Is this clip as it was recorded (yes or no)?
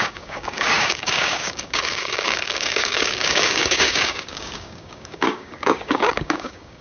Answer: no